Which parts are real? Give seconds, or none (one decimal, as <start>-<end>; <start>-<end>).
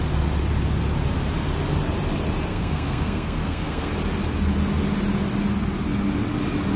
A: 0.0-2.5; 3.9-6.8